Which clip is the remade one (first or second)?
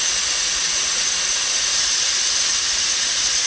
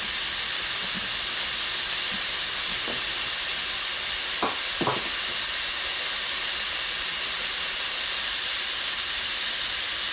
first